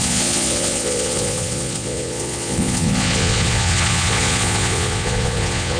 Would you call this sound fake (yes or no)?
yes